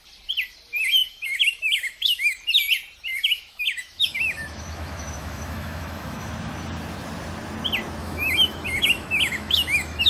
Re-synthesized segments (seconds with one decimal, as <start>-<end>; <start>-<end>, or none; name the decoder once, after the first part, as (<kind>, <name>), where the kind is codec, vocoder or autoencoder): 1.0-2.4 (autoencoder, DAC-VAE); 3.1-6.3; 8.0-10.1